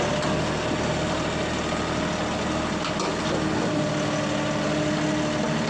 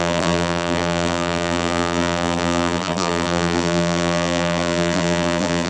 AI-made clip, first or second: second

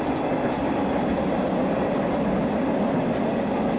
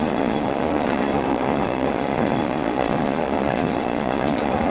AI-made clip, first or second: second